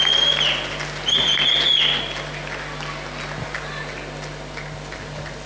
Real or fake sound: real